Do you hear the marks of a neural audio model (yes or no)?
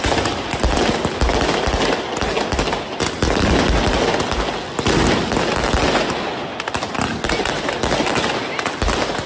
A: no